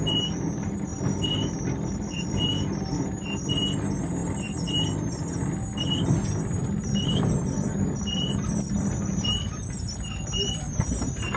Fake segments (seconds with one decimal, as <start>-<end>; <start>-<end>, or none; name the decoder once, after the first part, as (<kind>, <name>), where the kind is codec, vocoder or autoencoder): none